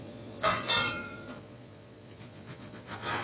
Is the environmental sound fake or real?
fake